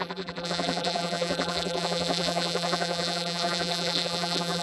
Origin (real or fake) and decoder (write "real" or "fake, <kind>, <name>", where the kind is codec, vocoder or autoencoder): fake, vocoder, BigVGAN v2